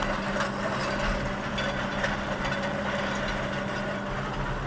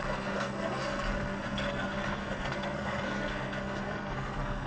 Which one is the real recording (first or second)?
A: first